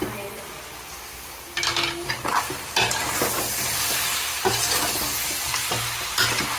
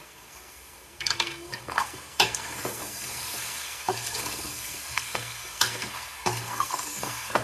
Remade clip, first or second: second